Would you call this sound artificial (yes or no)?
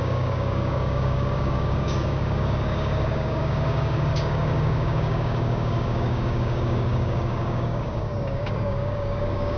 yes